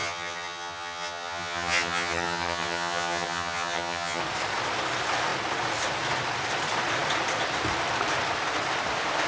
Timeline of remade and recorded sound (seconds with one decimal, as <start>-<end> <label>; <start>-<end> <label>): 0.0-4.2 remade; 4.2-9.3 recorded